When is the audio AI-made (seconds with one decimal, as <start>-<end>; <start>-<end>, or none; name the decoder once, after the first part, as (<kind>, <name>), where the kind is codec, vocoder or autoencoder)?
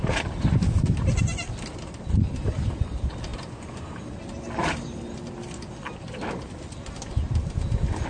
none